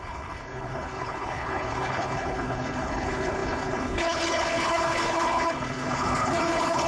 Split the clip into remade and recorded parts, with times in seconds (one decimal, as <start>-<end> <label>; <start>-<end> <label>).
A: 0.0-6.9 remade